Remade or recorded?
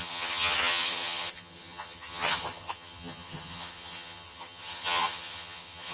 remade